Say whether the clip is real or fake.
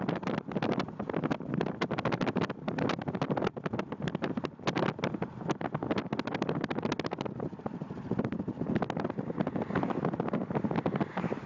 real